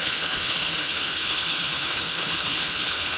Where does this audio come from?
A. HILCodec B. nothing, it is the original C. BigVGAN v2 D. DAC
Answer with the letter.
A